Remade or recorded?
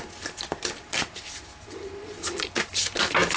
recorded